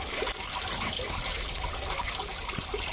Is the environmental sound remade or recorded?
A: recorded